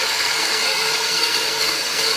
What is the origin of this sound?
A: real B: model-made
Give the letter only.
B